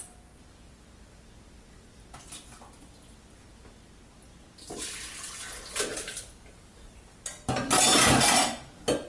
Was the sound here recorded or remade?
recorded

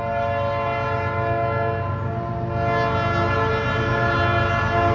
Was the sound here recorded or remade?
recorded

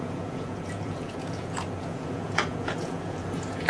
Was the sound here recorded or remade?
remade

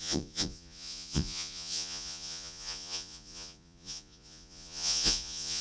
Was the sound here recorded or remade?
remade